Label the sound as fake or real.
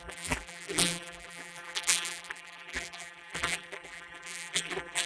fake